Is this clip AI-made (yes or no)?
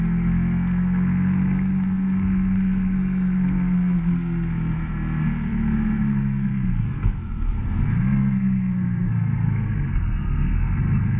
yes